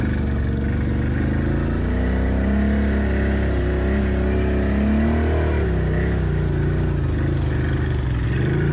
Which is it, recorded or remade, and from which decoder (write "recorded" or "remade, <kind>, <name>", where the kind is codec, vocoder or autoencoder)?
recorded